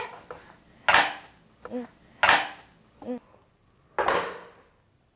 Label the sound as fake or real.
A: real